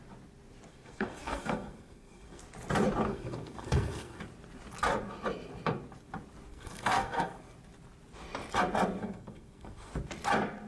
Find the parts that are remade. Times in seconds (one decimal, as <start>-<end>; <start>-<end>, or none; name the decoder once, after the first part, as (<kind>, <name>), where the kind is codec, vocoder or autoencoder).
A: 0.7-2.4 (codec, SNAC); 3.1-4.2; 6.5-7.4; 9.0-9.9

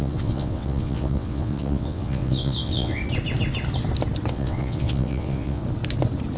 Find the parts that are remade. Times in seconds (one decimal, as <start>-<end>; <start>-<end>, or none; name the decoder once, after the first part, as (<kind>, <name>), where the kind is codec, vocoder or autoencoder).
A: 0.0-3.0 (vocoder, WaveNeXt); 4.3-5.6

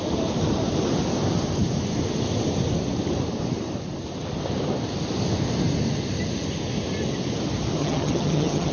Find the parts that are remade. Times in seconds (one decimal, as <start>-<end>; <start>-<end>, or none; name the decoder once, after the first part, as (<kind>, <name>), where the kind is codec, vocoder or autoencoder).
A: 7.8-8.7 (vocoder, HiFi-GAN)

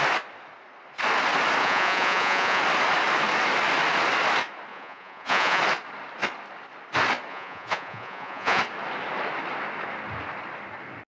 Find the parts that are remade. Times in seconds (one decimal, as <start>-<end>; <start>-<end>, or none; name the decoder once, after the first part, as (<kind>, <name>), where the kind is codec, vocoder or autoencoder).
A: 1.6-2.6 (vocoder, Vocos); 4.7-5.6; 7.3-8.6

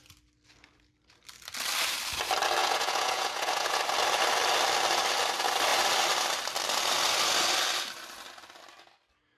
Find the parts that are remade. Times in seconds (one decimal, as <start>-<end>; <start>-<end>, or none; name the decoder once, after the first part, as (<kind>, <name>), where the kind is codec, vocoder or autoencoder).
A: 2.6-3.8 (vocoder, Vocos)